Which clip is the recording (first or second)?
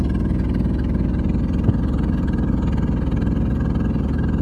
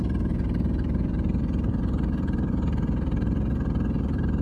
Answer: first